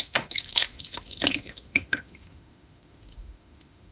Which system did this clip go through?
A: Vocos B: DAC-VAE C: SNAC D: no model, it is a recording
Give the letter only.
B